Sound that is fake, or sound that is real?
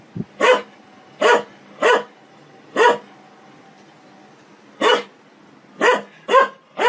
real